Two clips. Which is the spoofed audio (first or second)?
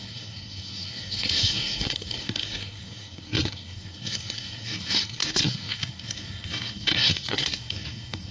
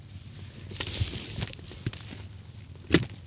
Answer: first